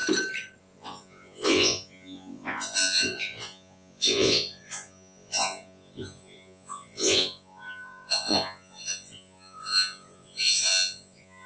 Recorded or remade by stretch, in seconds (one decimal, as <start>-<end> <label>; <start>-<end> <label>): 0.0-0.6 recorded; 0.6-11.5 remade